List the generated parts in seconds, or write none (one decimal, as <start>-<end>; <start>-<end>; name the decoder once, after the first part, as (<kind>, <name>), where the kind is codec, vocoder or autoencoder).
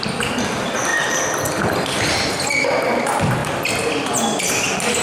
0.0-3.4 (vocoder, BigVGAN v2); 4.4-5.0